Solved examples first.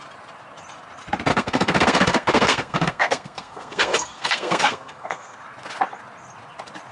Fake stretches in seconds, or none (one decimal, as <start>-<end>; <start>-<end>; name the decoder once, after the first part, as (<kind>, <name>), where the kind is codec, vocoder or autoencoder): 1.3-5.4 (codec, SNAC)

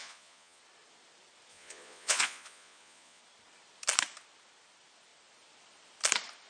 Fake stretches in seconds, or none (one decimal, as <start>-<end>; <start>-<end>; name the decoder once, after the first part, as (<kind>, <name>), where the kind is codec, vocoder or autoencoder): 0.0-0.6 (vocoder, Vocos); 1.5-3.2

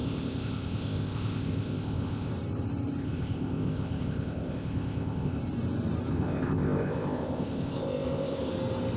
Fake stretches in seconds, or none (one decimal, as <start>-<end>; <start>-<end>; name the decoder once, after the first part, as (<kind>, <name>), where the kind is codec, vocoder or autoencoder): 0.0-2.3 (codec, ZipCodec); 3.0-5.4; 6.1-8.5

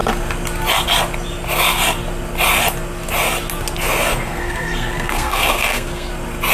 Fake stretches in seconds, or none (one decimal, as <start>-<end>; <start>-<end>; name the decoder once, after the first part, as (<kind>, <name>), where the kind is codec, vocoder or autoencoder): 4.1-6.1 (codec, SNAC)

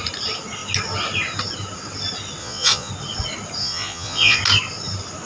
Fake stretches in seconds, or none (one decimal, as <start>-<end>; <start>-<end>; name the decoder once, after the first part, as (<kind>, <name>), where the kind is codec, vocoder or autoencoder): 2.4-2.9 (vocoder, Vocos); 3.6-4.4

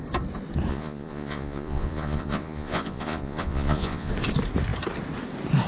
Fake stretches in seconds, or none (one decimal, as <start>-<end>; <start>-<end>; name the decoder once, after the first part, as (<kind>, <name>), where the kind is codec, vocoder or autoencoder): 0.7-4.1 (vocoder, Vocos)

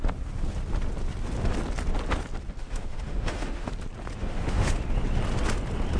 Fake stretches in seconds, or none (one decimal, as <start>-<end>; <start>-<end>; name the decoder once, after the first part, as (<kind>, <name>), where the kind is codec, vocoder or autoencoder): 2.6-3.7 (autoencoder, DAC-VAE); 4.2-4.8

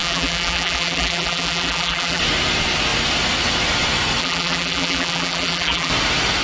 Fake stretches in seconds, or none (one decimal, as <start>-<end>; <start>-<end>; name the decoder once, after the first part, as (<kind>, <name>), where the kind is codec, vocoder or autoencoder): 0.0-2.2 (vocoder, BigVGAN v2); 4.2-5.9